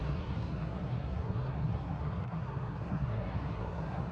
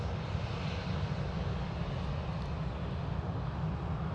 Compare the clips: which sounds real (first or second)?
second